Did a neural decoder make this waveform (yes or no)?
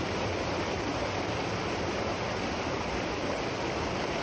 no